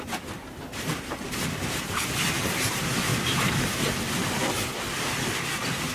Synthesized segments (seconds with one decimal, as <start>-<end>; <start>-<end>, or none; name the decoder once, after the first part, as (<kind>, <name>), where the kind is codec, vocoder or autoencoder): 0.4-2.3 (vocoder, BigVGAN v2); 3.1-4.0